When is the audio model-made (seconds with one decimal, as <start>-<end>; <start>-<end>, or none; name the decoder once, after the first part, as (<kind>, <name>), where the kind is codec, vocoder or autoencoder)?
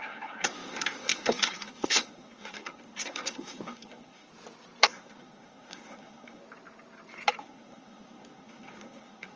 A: 0.0-4.3 (codec, SNAC); 4.8-6.4; 7.4-9.4